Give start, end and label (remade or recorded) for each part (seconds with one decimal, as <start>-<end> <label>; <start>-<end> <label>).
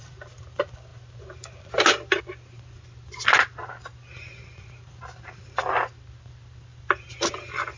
0.0-6.7 recorded; 6.7-7.3 remade; 7.3-7.8 recorded